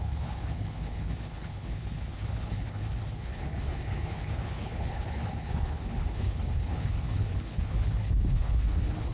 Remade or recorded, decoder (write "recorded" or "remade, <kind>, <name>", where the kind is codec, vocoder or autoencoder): remade, codec, HILCodec